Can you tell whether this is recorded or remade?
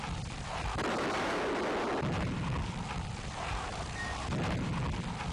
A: recorded